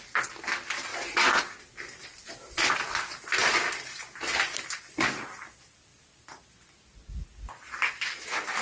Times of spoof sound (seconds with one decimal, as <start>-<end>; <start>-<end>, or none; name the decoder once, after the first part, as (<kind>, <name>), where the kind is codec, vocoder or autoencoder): none